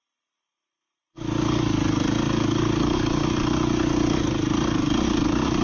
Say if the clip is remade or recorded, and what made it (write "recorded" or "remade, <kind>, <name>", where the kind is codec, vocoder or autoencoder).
recorded